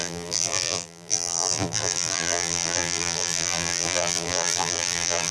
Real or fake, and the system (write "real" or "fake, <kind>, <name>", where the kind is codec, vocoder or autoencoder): fake, vocoder, BigVGAN v2